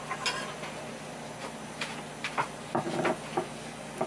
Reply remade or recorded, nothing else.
recorded